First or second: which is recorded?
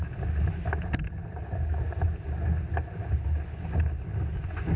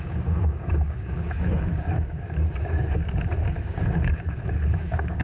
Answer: first